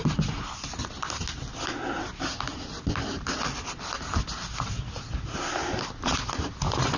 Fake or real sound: real